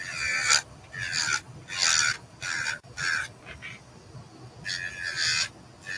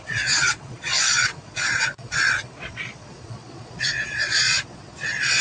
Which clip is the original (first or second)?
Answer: first